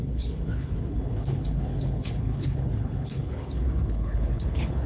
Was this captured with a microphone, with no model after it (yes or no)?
no